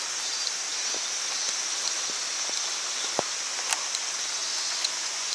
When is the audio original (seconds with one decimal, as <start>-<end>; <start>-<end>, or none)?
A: 0.0-4.4